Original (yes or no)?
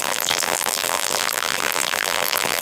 no